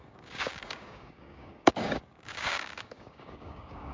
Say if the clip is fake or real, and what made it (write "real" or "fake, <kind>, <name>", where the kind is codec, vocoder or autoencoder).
fake, codec, DAC